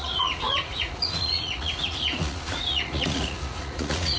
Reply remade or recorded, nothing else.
remade